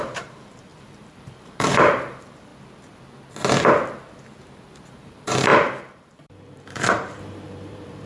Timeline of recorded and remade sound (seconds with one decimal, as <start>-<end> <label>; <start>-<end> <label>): 0.0-2.5 remade; 2.5-4.9 recorded; 4.9-8.1 remade

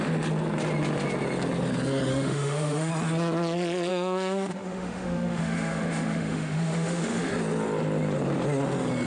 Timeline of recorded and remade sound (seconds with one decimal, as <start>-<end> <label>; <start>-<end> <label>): 0.0-2.1 recorded; 2.1-2.9 remade; 2.9-3.9 recorded; 3.9-7.3 remade; 7.3-9.1 recorded

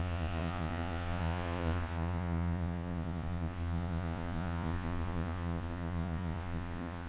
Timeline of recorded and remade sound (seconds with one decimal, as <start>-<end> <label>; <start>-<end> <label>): 0.0-7.1 remade

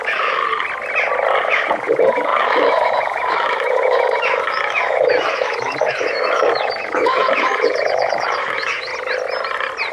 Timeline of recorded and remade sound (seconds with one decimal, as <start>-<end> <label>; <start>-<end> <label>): 0.0-0.4 remade; 0.4-1.4 recorded; 1.4-8.9 remade; 8.9-9.9 recorded

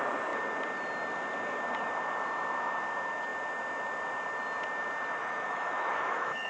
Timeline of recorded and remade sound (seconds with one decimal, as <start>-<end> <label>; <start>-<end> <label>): 0.0-5.2 recorded; 5.2-6.5 remade

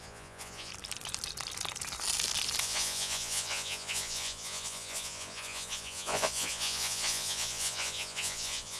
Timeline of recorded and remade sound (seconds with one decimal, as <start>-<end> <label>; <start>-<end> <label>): 0.0-0.7 remade; 0.7-2.6 recorded; 2.6-8.8 remade

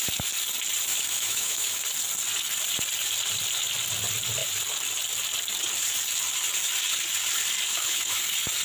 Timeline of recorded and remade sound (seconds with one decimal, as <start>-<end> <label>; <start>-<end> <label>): 0.0-0.9 recorded; 0.9-1.8 remade; 1.8-7.7 recorded; 7.7-8.2 remade; 8.2-8.6 recorded